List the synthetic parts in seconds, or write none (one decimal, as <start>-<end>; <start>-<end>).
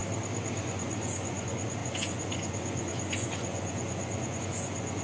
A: 0.6-5.0